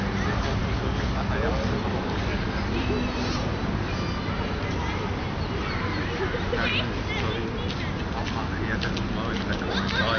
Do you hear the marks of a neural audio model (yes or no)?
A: no